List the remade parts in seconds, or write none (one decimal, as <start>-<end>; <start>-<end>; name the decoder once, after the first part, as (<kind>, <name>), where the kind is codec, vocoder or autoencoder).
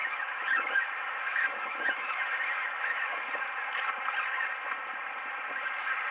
0.0-3.3 (autoencoder, DAC-VAE)